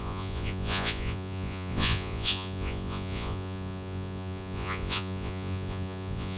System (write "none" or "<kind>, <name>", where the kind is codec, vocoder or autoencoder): vocoder, Vocos